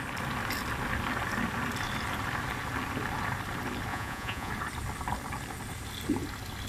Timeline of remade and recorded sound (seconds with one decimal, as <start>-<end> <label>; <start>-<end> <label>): 0.0-3.9 recorded; 3.9-4.5 remade; 4.5-6.7 recorded